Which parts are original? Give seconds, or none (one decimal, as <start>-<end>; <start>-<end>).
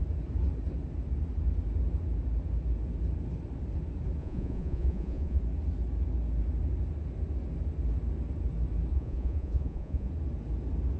0.0-4.2; 5.4-8.9; 10.1-11.0